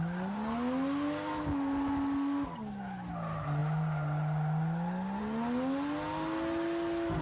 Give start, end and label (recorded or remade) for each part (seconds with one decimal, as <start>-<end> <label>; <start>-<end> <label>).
0.0-7.2 recorded